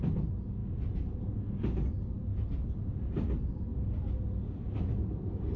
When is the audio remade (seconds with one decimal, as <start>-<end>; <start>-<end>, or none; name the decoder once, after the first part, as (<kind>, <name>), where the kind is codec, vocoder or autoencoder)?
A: none